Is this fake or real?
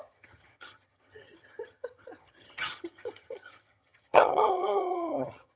fake